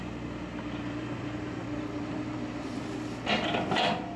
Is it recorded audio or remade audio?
recorded